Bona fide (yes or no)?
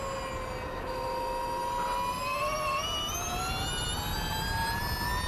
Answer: yes